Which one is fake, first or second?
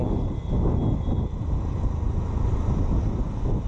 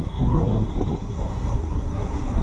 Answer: second